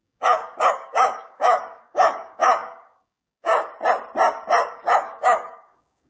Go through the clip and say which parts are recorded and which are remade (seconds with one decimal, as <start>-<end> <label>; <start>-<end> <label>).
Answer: 0.0-3.7 remade; 3.7-4.6 recorded; 4.6-6.1 remade